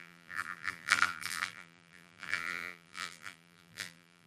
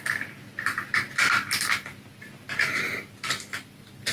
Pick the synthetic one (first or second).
first